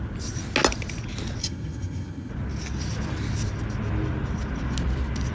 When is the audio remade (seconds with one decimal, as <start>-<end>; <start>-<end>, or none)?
1.4-2.3